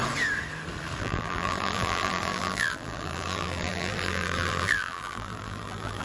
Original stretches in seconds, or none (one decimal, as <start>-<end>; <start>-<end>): 0.0-1.0